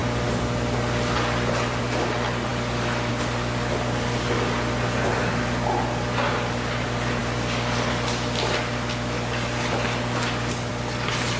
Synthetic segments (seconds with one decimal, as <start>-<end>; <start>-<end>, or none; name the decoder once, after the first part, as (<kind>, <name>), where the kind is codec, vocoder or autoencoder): none